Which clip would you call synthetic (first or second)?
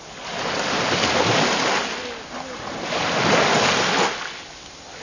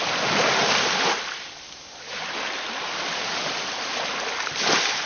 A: second